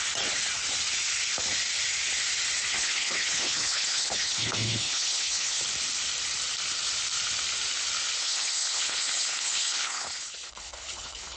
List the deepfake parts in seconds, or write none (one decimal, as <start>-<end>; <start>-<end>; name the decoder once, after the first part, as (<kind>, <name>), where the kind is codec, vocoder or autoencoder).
2.7-5.6 (codec, HILCodec); 8.2-11.4